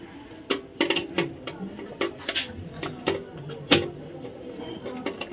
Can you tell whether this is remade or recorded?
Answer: recorded